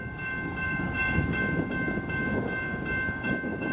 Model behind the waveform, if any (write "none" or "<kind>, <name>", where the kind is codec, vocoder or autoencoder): codec, DAC